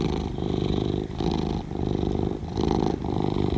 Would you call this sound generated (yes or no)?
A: no